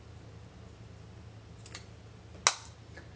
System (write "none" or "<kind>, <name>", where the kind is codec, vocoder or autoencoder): none